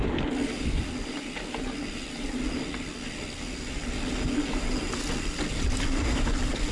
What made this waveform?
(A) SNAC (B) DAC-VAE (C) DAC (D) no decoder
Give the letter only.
D